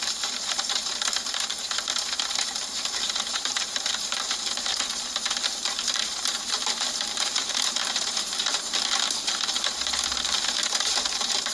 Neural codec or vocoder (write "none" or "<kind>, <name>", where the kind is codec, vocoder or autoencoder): vocoder, BigVGAN v2